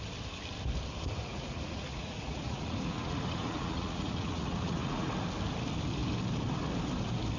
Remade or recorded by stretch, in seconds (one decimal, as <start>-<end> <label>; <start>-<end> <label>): 0.0-1.3 recorded; 1.3-5.1 remade; 5.1-7.4 recorded